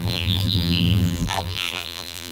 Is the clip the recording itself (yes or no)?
no